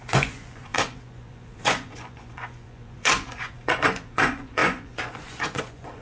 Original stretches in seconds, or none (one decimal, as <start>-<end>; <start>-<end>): none